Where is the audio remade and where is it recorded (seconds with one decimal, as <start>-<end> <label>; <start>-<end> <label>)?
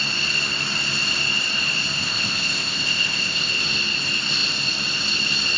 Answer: 0.0-2.0 recorded; 2.0-3.6 remade; 3.6-5.6 recorded